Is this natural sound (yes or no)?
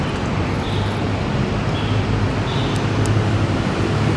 yes